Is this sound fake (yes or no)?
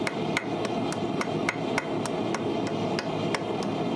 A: no